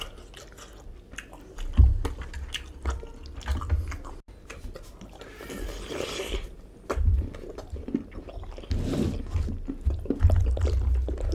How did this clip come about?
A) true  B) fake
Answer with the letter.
A